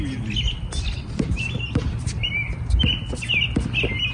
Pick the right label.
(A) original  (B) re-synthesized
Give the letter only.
A